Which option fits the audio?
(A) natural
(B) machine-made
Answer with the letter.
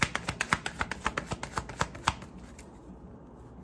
A